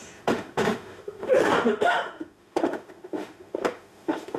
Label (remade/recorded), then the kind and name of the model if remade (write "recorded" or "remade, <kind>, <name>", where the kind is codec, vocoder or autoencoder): remade, autoencoder, DAC-VAE